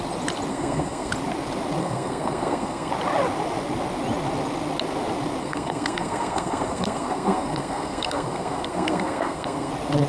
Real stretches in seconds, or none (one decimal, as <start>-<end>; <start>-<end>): 0.0-0.5; 1.1-1.8; 2.9-5.4; 9.7-10.1